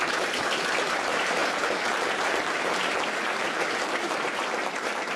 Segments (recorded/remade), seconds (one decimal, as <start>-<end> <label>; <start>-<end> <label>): 0.0-5.2 remade